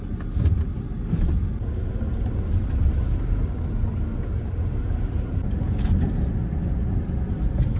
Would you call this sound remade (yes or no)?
no